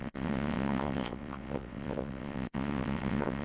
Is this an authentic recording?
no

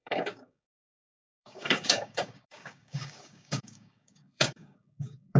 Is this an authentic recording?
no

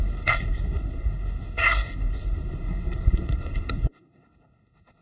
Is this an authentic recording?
no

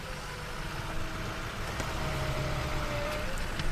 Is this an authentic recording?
yes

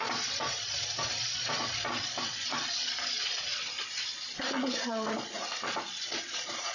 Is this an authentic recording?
no